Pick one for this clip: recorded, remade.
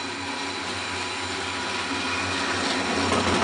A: recorded